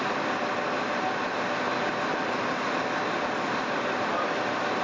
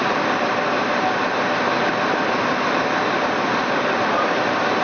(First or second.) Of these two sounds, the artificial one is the second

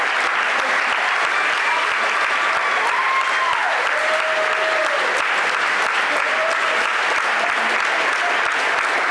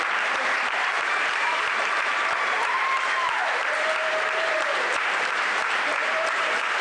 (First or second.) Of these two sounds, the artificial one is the second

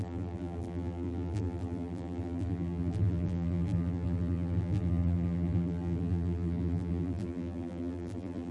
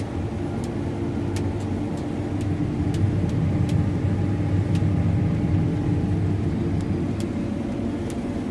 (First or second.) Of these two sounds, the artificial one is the first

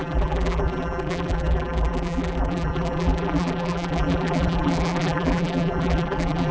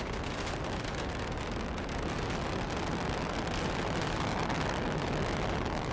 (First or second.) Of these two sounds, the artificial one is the first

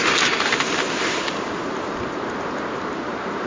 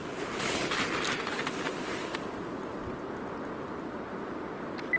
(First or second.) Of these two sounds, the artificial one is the first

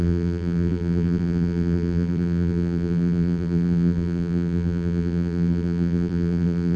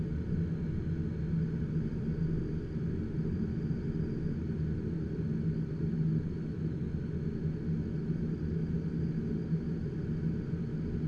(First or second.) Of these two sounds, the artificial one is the first